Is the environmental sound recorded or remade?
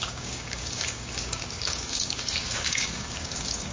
remade